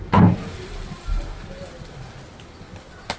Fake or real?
real